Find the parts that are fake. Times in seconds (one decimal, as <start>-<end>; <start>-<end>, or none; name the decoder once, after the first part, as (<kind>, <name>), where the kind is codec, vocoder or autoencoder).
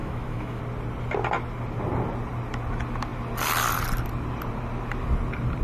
0.0-0.6 (autoencoder, DAC-VAE)